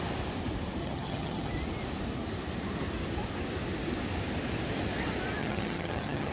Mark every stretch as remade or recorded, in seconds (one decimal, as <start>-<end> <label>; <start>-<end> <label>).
0.0-0.8 recorded; 0.8-1.5 remade; 1.5-5.4 recorded; 5.4-6.3 remade